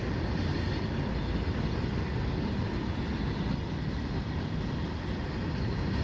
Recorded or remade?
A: recorded